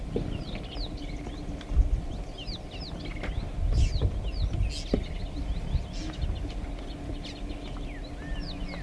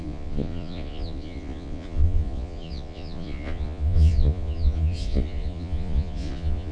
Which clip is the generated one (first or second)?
second